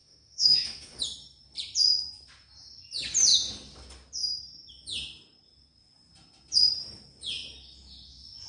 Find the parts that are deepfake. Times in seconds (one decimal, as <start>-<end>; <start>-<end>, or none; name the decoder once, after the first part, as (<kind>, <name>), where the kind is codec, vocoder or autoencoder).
0.0-1.0 (autoencoder, DAC-VAE)